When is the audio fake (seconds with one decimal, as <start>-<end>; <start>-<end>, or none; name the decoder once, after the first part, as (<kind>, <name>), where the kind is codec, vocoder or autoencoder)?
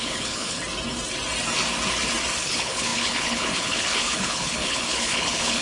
0.0-0.6 (codec, HILCodec); 2.4-5.6